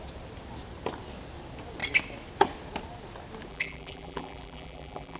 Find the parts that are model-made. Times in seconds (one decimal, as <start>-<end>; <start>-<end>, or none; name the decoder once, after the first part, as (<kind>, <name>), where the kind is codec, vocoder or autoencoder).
3.5-5.2 (vocoder, BigVGAN v2)